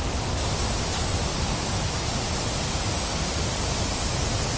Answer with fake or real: real